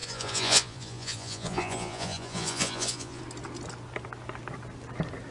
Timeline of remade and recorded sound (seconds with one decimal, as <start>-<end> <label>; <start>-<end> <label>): 0.0-3.2 remade; 3.2-5.3 recorded